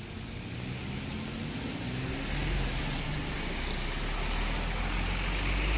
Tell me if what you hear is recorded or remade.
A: recorded